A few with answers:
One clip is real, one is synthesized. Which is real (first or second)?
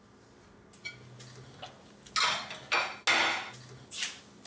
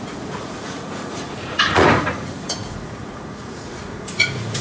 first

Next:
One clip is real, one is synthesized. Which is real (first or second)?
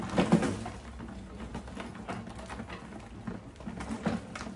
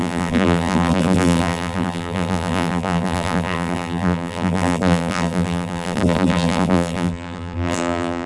first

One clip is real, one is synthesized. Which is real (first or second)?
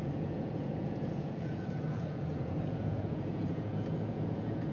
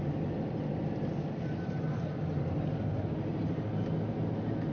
second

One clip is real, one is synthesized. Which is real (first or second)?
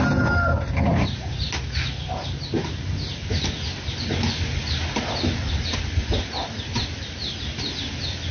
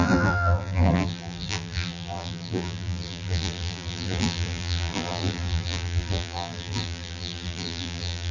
first